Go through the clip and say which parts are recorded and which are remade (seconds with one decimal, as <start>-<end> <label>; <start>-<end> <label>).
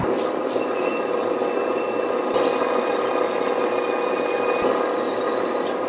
0.0-5.9 recorded